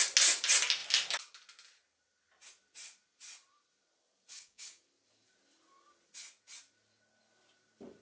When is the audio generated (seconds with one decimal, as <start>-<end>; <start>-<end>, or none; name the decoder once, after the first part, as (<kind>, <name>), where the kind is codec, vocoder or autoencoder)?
4.3-4.8 (codec, DAC)